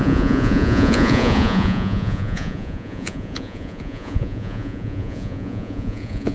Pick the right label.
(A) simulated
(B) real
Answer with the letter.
A